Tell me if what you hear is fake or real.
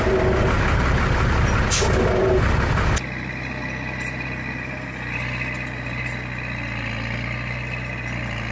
real